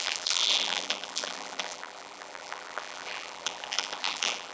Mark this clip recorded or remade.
remade